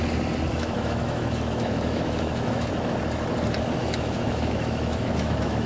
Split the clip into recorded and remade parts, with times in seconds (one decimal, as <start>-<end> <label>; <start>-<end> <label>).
0.0-0.5 recorded; 0.5-2.7 remade; 2.7-3.8 recorded; 3.8-5.7 remade